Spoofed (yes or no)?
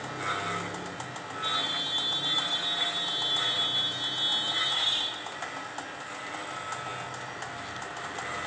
no